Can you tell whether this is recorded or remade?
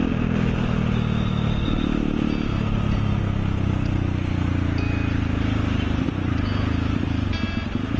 recorded